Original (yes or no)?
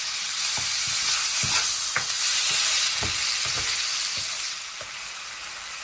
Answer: yes